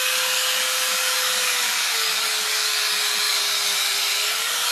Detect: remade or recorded remade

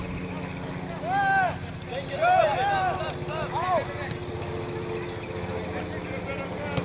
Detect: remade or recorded recorded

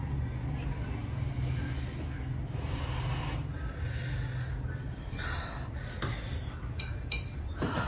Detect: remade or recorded recorded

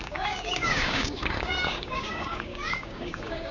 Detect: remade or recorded remade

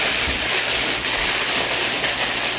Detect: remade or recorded recorded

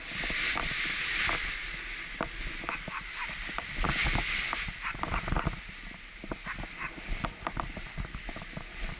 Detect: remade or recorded recorded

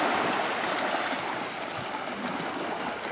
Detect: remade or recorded recorded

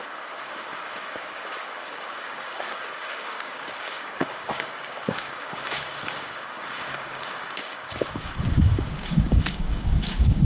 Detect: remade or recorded remade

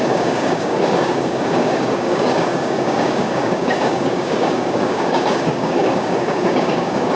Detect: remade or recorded remade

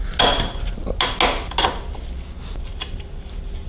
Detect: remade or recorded recorded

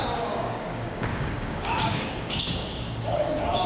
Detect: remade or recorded remade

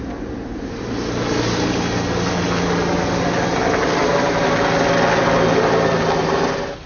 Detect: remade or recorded recorded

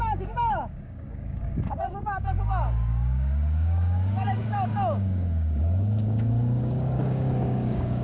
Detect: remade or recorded remade